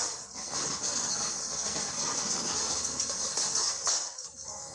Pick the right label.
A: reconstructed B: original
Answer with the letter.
A